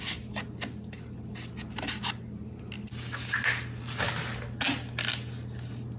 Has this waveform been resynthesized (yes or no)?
no